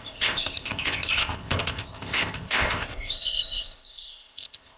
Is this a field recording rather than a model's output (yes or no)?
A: no